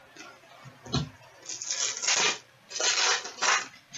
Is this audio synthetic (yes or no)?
no